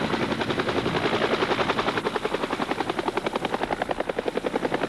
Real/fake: real